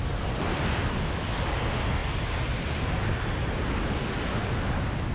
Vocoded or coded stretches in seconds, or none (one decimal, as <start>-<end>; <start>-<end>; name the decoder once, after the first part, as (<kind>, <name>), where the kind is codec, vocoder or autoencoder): none

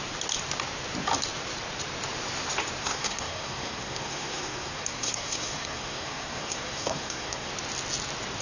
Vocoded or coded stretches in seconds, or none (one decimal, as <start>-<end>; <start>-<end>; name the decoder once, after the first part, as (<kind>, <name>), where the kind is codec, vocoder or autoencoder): 2.8-7.5 (codec, SNAC)

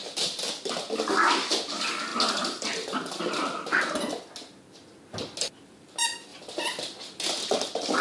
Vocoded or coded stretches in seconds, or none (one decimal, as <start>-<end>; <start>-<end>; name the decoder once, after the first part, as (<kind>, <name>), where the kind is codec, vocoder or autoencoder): none

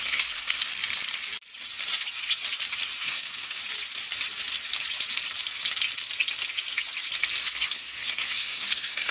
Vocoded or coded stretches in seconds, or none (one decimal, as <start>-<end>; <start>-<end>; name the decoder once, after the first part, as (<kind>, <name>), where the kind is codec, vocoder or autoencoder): 0.0-0.7 (codec, SNAC); 3.0-3.6; 7.4-9.1

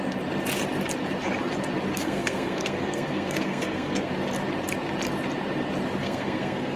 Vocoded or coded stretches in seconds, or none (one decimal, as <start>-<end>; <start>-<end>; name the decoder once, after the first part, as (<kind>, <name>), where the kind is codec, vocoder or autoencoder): 1.9-4.1 (codec, SNAC); 6.0-6.8

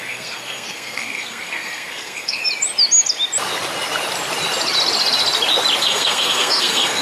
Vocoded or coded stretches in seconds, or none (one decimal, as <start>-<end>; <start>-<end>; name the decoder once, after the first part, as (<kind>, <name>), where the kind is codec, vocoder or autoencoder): 0.0-2.4 (codec, SNAC); 5.8-7.0

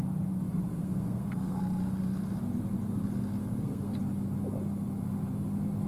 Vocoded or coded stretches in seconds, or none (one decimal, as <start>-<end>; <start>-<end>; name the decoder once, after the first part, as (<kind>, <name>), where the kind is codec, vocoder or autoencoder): 0.7-1.6 (codec, SNAC); 3.4-4.0